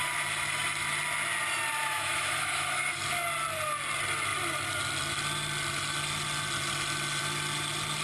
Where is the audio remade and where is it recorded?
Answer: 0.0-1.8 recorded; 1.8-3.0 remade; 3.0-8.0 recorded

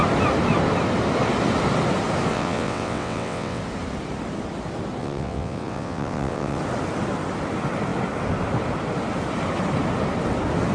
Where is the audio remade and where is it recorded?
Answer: 0.0-2.3 recorded; 2.3-3.6 remade; 3.6-5.0 recorded; 5.0-6.6 remade; 6.6-10.7 recorded

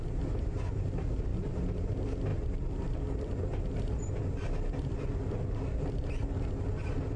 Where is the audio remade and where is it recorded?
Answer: 0.0-7.2 recorded

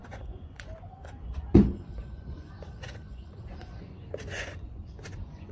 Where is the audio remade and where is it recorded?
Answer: 0.0-5.5 remade

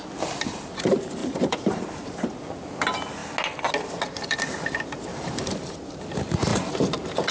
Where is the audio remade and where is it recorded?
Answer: 0.0-1.2 recorded; 1.2-1.8 remade; 1.8-5.1 recorded; 5.1-5.8 remade; 5.8-7.3 recorded

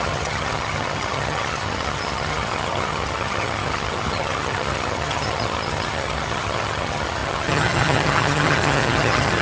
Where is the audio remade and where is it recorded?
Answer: 0.0-9.4 remade

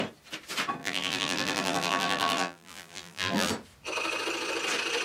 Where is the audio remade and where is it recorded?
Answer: 0.0-0.8 recorded; 0.8-3.5 remade; 3.5-5.0 recorded

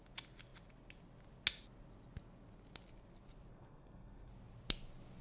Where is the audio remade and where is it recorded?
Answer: 0.0-3.5 recorded; 3.5-4.3 remade; 4.3-5.2 recorded